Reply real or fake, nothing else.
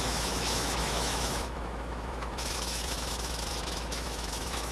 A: fake